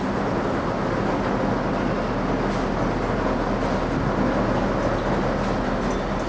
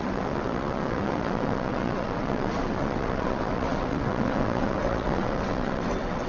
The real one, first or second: first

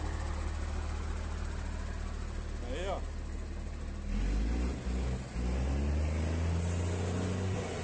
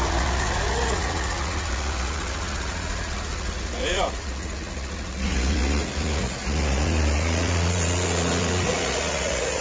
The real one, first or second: first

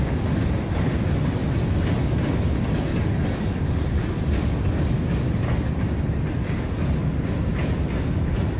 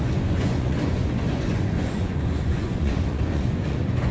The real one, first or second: first